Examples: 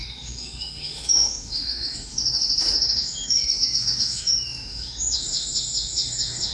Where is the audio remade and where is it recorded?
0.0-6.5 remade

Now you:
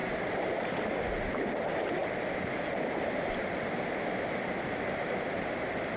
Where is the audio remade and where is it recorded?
0.0-6.0 recorded

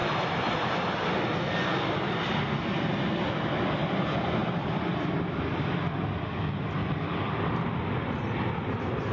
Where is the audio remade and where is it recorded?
0.0-0.9 remade; 0.9-6.8 recorded; 6.8-7.7 remade; 7.7-9.1 recorded

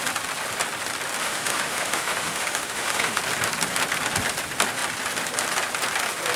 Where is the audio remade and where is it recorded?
0.0-1.2 recorded; 1.2-3.2 remade; 3.2-6.4 recorded

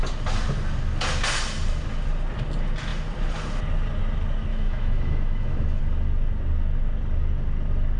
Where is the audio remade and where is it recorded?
0.0-4.5 recorded; 4.5-5.8 remade; 5.8-8.0 recorded